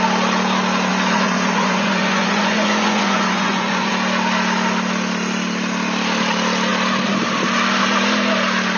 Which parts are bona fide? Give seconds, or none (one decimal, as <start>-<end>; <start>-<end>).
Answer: 0.0-0.9; 3.9-8.8

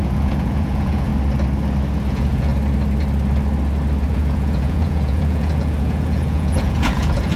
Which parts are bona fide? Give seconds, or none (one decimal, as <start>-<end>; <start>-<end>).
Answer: 1.1-2.1; 2.5-4.1

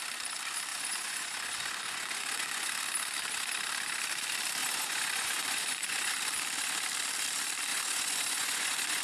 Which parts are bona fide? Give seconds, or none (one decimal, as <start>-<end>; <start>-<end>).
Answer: 0.0-0.7; 2.7-4.6; 6.1-7.7

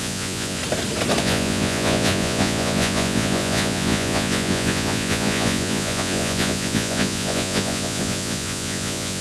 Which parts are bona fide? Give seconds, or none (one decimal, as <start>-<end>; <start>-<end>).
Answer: 0.6-1.2

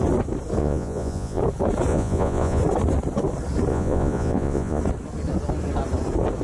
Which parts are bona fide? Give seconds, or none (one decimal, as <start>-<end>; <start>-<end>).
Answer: 0.0-0.6; 1.4-1.9; 2.6-3.7; 4.8-6.4

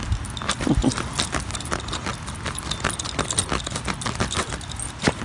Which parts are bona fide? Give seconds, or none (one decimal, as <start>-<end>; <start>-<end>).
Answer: 0.0-5.2

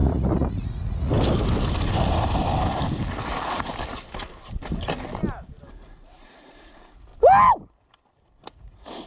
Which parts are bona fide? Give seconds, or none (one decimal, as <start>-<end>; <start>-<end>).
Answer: 1.1-5.7; 7.1-8.5

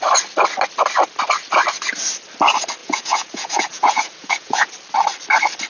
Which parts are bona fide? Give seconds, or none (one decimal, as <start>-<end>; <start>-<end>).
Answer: 0.0-2.8; 4.7-5.7